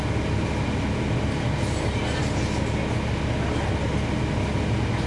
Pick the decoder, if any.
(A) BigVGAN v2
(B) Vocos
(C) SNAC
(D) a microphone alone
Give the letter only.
D